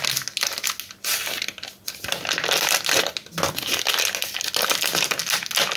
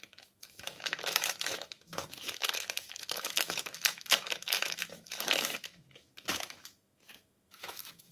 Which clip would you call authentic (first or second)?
first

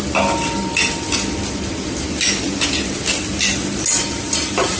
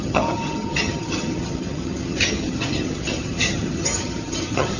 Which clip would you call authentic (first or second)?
first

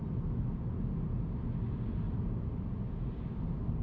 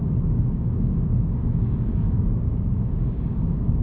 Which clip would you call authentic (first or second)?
first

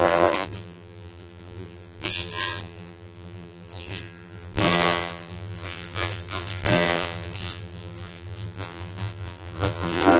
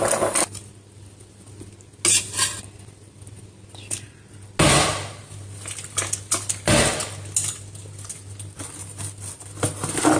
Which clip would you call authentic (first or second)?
second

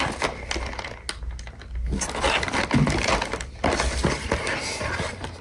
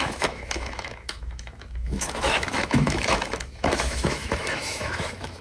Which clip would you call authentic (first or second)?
first